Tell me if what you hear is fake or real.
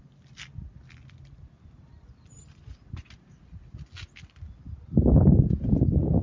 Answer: real